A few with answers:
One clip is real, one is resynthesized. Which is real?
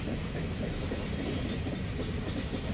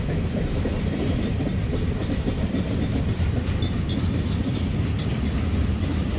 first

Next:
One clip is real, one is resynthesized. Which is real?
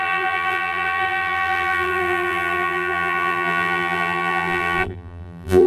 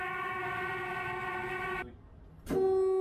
second